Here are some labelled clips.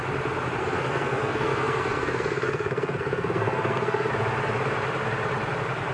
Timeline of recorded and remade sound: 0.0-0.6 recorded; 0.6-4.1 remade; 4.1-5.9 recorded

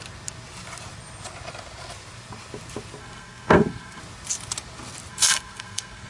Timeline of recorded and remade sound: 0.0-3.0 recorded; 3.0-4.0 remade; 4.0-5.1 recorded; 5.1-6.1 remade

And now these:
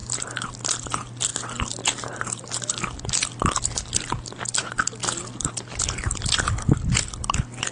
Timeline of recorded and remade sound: 0.0-7.7 recorded

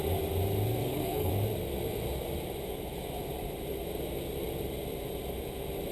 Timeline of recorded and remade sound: 0.0-0.8 recorded; 0.8-1.3 remade; 1.3-5.9 recorded

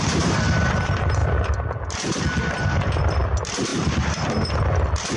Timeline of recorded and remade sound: 0.0-5.2 recorded

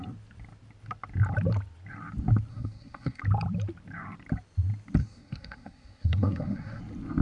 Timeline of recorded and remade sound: 0.0-2.5 recorded; 2.5-3.2 remade; 3.2-5.0 recorded; 5.0-6.8 remade; 6.8-7.2 recorded

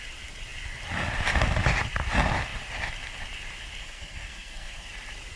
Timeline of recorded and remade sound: 0.0-3.8 recorded; 3.8-4.9 remade; 4.9-5.4 recorded

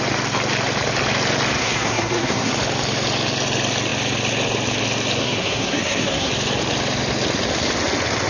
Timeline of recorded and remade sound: 0.0-1.6 recorded; 1.6-2.5 remade; 2.5-5.2 recorded; 5.2-6.3 remade; 6.3-8.3 recorded